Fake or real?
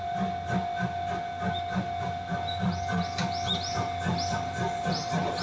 real